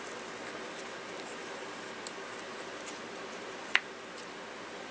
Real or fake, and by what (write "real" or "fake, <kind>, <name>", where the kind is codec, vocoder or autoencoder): real